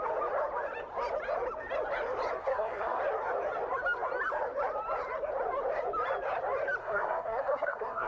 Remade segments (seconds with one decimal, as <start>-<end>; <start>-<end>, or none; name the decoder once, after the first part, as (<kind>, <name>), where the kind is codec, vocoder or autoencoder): 2.4-3.0 (codec, SNAC); 6.8-8.1